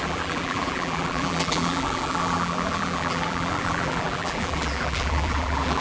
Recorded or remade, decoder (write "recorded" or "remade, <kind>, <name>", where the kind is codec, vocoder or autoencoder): remade, vocoder, BigVGAN v2